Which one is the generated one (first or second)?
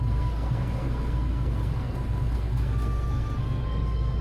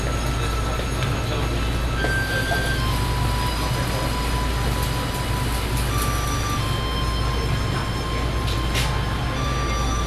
first